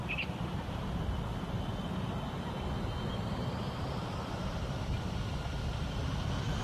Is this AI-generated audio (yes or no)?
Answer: no